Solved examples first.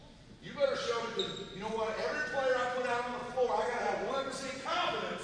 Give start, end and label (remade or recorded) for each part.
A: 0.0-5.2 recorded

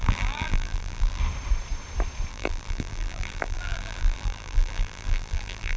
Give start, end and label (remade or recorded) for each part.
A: 0.0-1.2 remade; 1.2-2.3 recorded; 2.3-5.8 remade

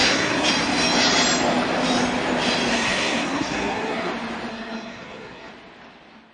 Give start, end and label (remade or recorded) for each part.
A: 0.0-0.5 remade; 0.5-2.7 recorded; 2.7-4.1 remade; 4.1-4.5 recorded; 4.5-5.5 remade; 5.5-6.3 recorded

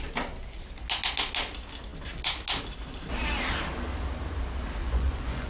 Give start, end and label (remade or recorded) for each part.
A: 0.0-4.8 recorded; 4.8-5.5 remade

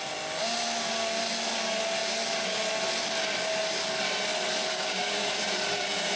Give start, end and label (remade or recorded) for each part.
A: 0.0-4.7 recorded; 4.7-5.4 remade; 5.4-6.2 recorded